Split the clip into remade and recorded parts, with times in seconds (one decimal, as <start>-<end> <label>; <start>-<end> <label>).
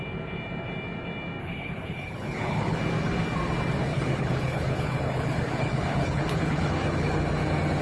0.0-1.4 recorded; 1.4-2.8 remade; 2.8-3.9 recorded; 3.9-7.2 remade; 7.2-7.8 recorded